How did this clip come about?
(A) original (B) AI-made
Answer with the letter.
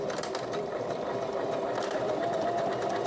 B